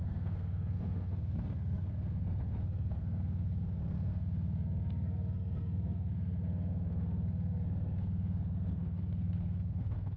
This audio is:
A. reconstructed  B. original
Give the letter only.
A